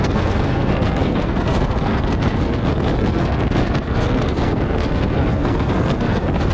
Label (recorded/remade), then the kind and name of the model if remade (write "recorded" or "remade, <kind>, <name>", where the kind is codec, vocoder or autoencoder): remade, codec, SNAC